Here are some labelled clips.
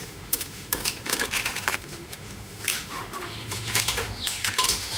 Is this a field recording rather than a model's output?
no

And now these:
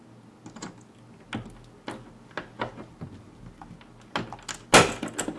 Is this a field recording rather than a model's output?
yes